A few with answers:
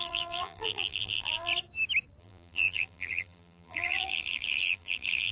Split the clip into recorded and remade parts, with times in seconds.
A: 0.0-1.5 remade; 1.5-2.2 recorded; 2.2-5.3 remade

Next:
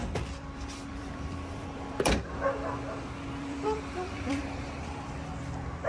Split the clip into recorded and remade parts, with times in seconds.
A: 0.0-2.1 remade; 2.1-3.4 recorded; 3.4-4.3 remade; 4.3-5.9 recorded

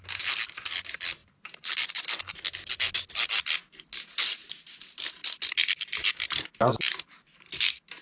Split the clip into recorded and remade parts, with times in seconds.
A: 0.0-1.2 recorded; 1.2-2.4 remade; 2.4-8.0 recorded